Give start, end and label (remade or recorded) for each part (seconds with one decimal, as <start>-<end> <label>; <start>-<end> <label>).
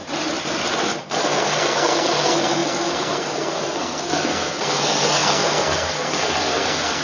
0.0-1.0 recorded; 1.0-7.0 remade